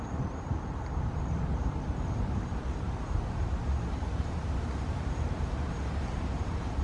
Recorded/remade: remade